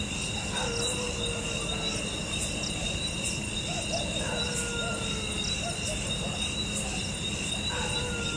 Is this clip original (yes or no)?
yes